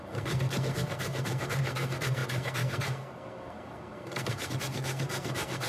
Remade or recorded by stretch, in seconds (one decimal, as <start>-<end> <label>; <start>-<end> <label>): 0.0-5.7 remade

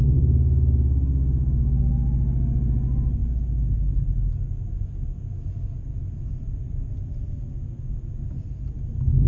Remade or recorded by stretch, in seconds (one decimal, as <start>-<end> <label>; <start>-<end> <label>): 0.0-9.3 recorded

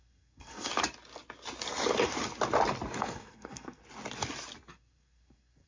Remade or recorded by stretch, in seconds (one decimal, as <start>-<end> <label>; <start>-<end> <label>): 0.0-0.7 remade; 0.7-3.0 recorded; 3.0-3.8 remade; 3.8-4.7 recorded; 4.7-5.7 remade

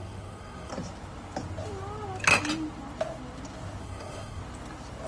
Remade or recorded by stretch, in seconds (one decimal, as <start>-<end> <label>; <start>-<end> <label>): 0.0-0.7 remade; 0.7-3.8 recorded; 3.8-4.4 remade; 4.4-5.1 recorded

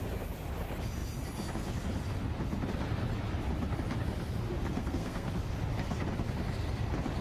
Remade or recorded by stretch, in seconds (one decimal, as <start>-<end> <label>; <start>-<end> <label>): 0.0-4.8 recorded; 4.8-5.3 remade; 5.3-7.2 recorded

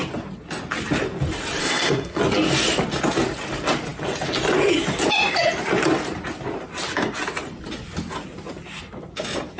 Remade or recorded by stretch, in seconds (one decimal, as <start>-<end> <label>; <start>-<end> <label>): 0.0-1.6 recorded; 1.6-2.2 remade; 2.2-9.6 recorded

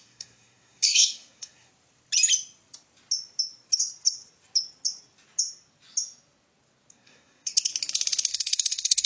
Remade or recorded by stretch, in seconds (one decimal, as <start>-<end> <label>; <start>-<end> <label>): 0.0-1.7 remade; 1.7-6.9 recorded; 6.9-7.7 remade; 7.7-8.3 recorded; 8.3-9.1 remade